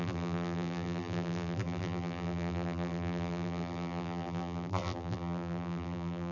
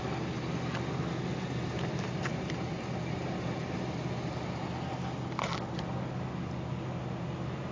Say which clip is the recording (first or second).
second